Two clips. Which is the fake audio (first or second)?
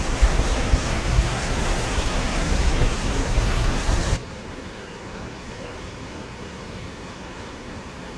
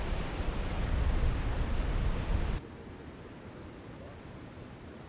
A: first